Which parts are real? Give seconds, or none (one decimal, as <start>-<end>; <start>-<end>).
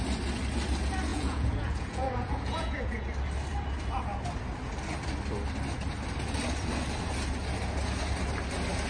0.0-1.1; 3.0-8.9